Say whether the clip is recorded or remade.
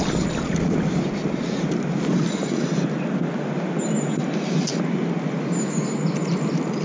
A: recorded